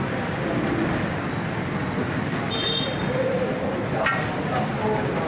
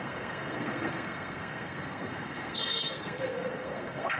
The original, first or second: first